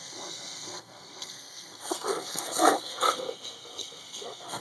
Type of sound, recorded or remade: remade